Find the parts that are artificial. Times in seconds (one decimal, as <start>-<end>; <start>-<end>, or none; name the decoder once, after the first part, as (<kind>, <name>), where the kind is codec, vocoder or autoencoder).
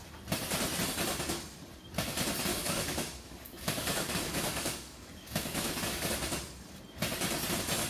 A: 2.5-6.1 (codec, DAC)